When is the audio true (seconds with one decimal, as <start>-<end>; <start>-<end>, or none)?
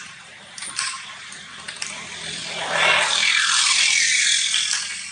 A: 0.0-5.1